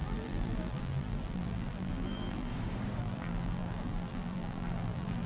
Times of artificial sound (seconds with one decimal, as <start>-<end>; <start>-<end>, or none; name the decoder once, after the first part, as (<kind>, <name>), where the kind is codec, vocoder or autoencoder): 0.0-2.5 (vocoder, BigVGAN v2); 3.0-5.3